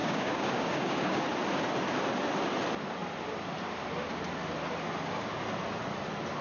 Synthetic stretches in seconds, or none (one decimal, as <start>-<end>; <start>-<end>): 0.0-1.2